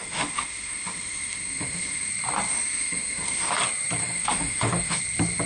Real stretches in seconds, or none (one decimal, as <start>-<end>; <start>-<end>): 2.1-2.5; 3.5-4.0; 5.0-5.5